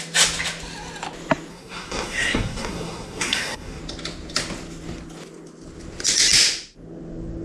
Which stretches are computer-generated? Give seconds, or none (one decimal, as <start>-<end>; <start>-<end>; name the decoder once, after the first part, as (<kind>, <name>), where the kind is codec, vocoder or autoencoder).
1.5-3.8 (codec, SNAC)